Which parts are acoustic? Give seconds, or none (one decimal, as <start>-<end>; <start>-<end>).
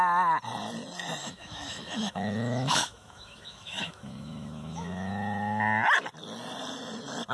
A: 0.0-1.2; 5.1-7.3